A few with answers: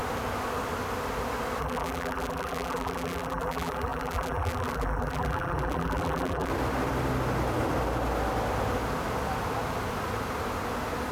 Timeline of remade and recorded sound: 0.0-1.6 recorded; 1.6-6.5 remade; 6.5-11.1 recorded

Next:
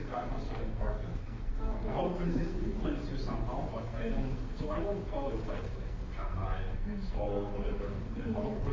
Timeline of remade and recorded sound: 0.0-3.0 remade; 3.0-3.7 recorded; 3.7-8.7 remade